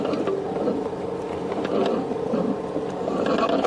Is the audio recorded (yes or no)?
yes